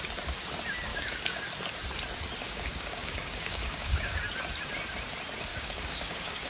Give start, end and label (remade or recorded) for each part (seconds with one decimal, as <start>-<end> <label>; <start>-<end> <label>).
0.0-0.9 recorded; 0.9-1.4 remade; 1.4-2.4 recorded; 2.4-4.2 remade; 4.2-5.5 recorded; 5.5-6.5 remade